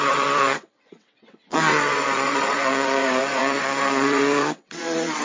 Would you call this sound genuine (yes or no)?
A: no